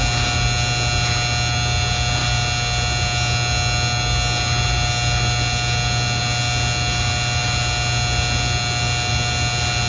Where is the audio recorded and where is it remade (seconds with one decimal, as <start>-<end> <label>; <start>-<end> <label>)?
0.0-9.9 recorded